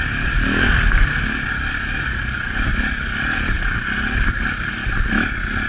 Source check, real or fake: real